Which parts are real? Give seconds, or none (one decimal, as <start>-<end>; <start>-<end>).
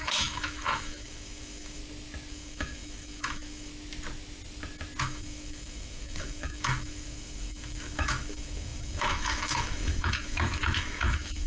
1.8-2.3; 3.7-5.0